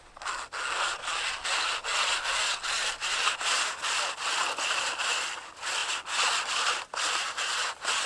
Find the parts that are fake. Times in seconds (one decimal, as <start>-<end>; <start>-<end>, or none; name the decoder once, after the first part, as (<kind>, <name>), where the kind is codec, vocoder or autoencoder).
none